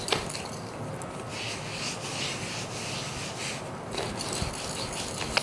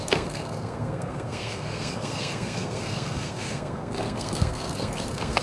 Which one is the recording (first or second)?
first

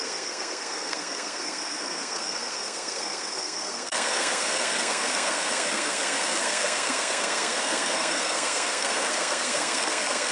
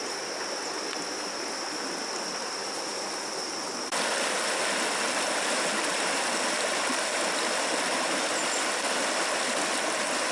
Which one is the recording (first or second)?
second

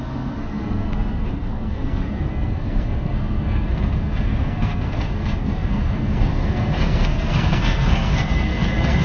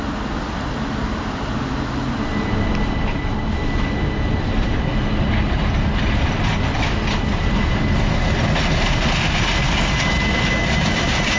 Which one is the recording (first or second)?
second